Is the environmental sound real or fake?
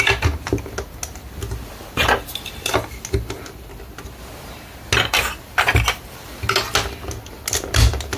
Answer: real